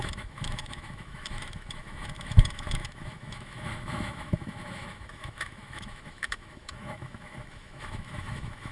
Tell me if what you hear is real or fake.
fake